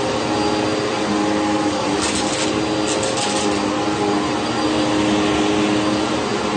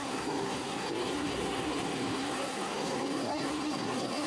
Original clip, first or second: first